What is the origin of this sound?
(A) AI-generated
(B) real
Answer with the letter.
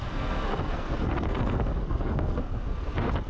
A